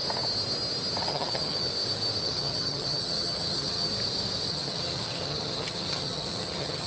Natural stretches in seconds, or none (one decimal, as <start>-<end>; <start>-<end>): 0.0-1.0; 1.7-2.2; 3.9-4.5